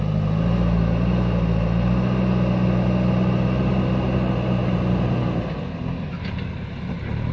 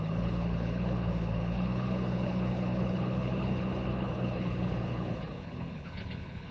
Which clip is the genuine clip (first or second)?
first